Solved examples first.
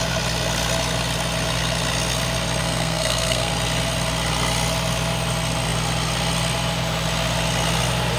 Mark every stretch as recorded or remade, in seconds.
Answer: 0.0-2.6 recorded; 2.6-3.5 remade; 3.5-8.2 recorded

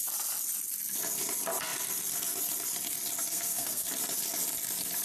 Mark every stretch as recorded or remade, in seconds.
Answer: 0.0-3.3 recorded; 3.3-3.9 remade; 3.9-5.0 recorded